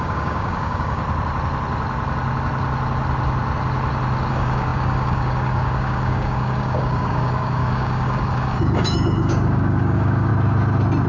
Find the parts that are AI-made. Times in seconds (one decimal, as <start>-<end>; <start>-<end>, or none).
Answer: 0.0-1.0; 4.3-10.3